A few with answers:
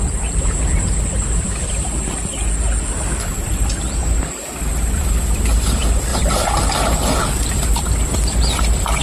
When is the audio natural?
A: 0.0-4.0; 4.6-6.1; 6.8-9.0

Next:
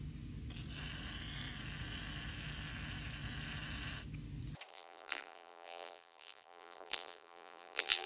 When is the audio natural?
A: 0.0-4.7

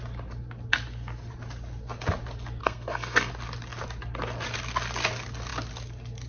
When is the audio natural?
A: 0.0-2.6; 3.3-6.3

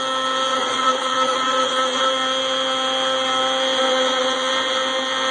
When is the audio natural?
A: 0.0-0.5; 2.0-3.9; 4.5-5.3

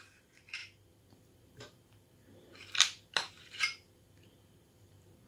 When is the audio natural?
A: none

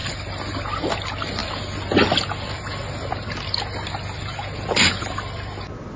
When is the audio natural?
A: 0.0-6.0

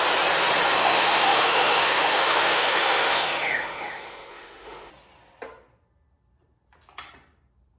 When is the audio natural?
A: 0.0-0.8; 4.9-7.8